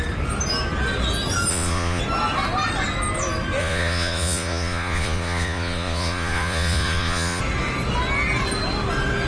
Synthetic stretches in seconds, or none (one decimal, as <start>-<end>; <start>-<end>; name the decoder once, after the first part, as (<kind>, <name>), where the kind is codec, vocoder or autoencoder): 1.5-2.0 (vocoder, Vocos); 3.6-7.4